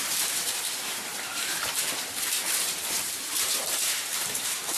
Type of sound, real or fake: fake